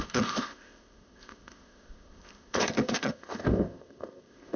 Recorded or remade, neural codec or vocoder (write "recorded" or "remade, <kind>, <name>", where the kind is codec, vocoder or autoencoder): remade, codec, ZipCodec